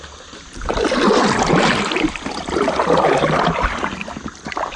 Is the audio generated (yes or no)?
no